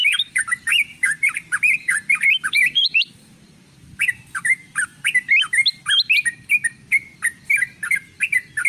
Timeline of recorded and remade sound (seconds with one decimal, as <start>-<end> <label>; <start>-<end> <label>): 0.0-4.9 remade; 4.9-8.7 recorded